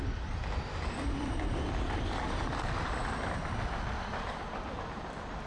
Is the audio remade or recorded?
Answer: recorded